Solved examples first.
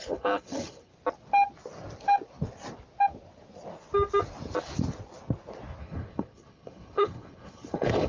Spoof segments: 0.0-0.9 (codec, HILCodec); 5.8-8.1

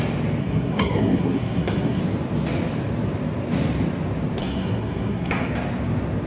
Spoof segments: 0.4-2.0 (codec, SNAC); 4.4-5.5

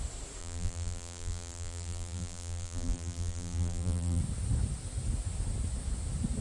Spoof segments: 0.4-4.2 (vocoder, BigVGAN v2)

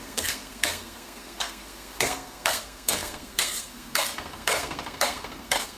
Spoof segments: 0.0-5.8 (codec, SNAC)

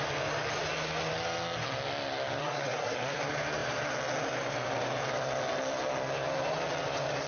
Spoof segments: 2.4-3.2 (codec, SNAC)

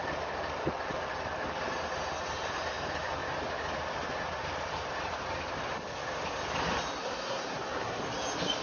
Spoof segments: 7.0-8.0 (codec, SNAC)

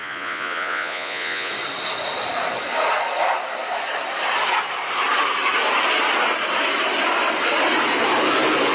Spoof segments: 0.0-1.5 (vocoder, Vocos)

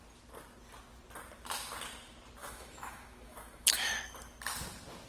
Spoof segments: 2.4-4.0 (autoencoder, DAC-VAE)